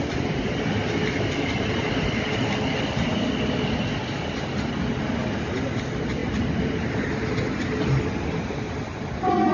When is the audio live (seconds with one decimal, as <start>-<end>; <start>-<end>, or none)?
0.0-9.5

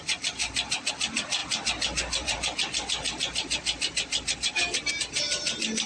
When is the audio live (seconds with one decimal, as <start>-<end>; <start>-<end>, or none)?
0.0-5.9

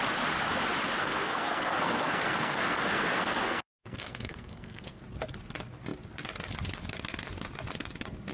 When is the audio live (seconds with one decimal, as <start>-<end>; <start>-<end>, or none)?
0.0-1.0; 5.0-8.3

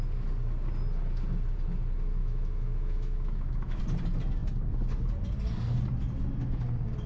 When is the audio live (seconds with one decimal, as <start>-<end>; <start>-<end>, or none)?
0.0-2.2; 3.8-7.1

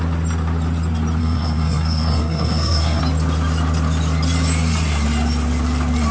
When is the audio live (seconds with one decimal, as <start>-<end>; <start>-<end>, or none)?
0.0-1.2; 3.0-6.1

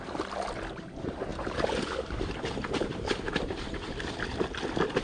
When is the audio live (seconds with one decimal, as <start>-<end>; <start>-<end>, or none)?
0.0-1.3; 3.3-5.0